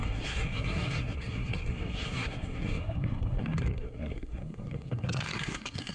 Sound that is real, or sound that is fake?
fake